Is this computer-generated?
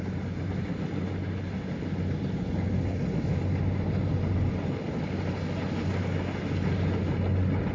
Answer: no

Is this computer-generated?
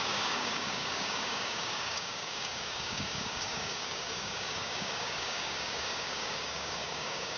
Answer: yes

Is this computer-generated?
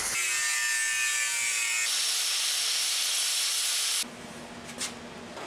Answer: no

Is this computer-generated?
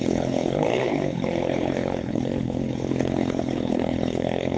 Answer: yes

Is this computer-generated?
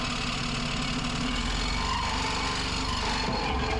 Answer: no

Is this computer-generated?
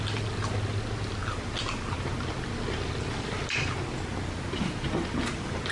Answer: no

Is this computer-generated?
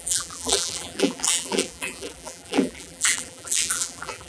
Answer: yes